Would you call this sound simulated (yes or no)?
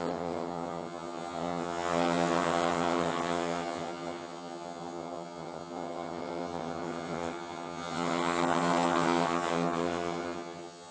yes